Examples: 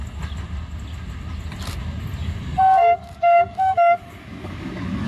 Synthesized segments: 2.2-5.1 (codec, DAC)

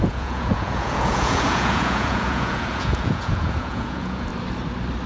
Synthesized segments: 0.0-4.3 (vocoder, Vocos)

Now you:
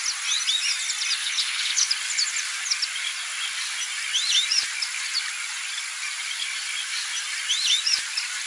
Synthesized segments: 1.2-1.9 (codec, HILCodec)